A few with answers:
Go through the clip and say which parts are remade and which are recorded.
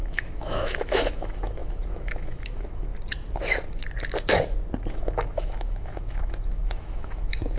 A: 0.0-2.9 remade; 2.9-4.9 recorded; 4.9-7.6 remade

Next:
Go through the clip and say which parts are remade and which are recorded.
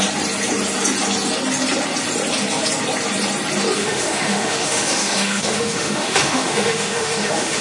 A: 0.0-3.8 recorded; 3.8-7.6 remade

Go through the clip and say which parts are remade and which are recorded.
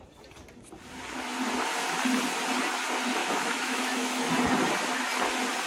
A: 0.0-3.2 recorded; 3.2-4.3 remade; 4.3-5.7 recorded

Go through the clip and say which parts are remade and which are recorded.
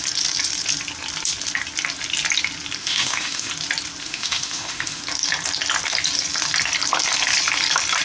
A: 0.0-2.8 recorded; 2.8-3.5 remade; 3.5-4.0 recorded; 4.0-5.0 remade; 5.0-8.0 recorded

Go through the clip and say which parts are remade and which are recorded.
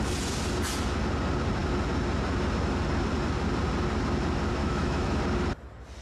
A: 0.0-4.6 recorded; 4.6-5.2 remade; 5.2-6.0 recorded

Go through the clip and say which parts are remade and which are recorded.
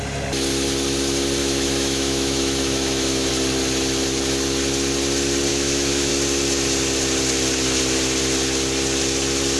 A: 0.0-1.4 recorded; 1.4-3.3 remade; 3.3-5.5 recorded; 5.5-6.1 remade; 6.1-9.6 recorded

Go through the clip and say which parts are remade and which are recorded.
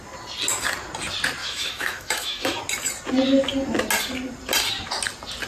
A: 0.0-1.4 recorded; 1.4-2.6 remade; 2.6-5.5 recorded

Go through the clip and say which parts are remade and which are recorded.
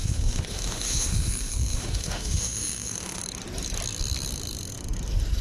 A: 0.0-3.2 remade; 3.2-5.4 recorded